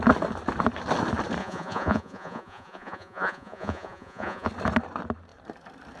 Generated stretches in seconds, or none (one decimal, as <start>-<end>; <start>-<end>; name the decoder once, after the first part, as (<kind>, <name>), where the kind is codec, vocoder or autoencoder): 1.4-4.5 (vocoder, Vocos)